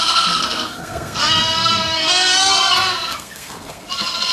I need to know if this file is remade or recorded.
remade